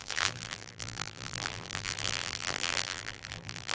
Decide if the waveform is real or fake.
fake